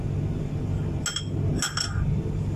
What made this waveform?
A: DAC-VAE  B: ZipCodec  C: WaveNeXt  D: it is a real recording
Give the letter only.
D